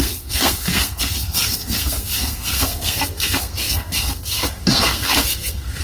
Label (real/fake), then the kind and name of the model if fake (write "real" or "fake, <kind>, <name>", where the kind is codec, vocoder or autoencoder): fake, codec, SNAC